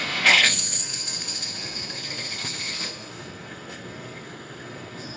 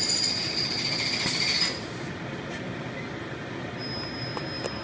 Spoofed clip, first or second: first